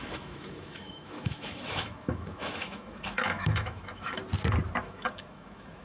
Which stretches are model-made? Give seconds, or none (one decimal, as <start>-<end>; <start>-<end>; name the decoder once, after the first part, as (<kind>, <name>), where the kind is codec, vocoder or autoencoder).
0.0-4.2 (autoencoder, DAC-VAE); 4.8-5.8